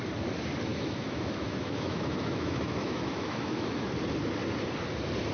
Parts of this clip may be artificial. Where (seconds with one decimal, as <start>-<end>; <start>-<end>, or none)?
0.7-3.9